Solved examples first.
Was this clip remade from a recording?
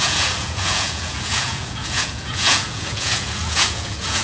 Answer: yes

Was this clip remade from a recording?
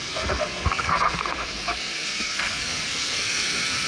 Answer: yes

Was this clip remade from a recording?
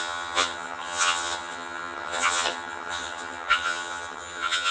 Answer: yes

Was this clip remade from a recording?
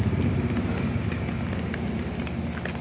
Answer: no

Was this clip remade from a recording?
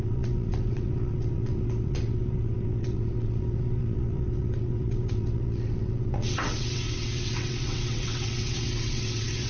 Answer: yes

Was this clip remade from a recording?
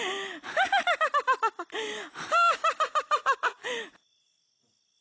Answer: no